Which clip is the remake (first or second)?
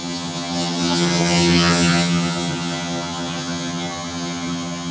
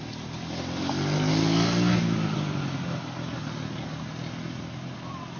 first